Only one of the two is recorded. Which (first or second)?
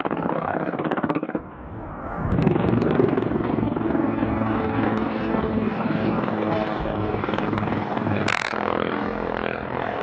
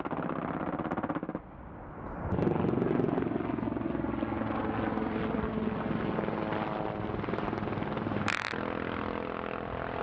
second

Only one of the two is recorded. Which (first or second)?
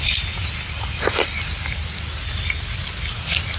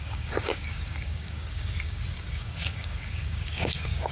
first